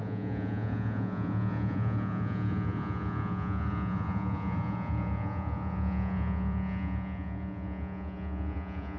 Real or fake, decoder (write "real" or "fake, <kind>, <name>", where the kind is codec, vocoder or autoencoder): fake, vocoder, Vocos